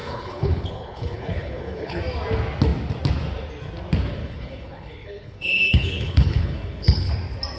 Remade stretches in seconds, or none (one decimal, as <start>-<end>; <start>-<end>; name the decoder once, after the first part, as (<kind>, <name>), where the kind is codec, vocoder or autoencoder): 0.0-2.0 (codec, HILCodec); 4.2-7.1